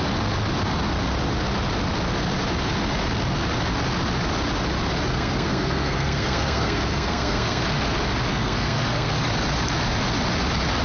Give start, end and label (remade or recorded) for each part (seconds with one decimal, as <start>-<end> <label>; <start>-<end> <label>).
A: 0.0-5.1 recorded; 5.1-7.6 remade; 7.6-8.3 recorded; 8.3-9.1 remade; 9.1-10.8 recorded